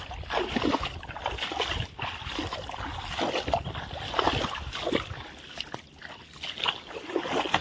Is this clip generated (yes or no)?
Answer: no